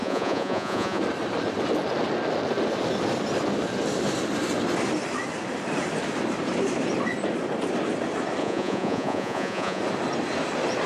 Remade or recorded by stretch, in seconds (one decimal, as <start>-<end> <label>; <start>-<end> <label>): 0.0-1.0 remade; 1.0-8.4 recorded; 8.4-9.8 remade; 9.8-10.9 recorded